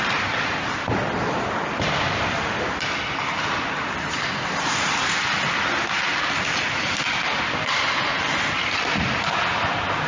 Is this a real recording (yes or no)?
yes